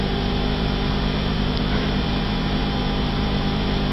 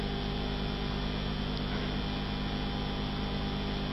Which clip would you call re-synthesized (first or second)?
first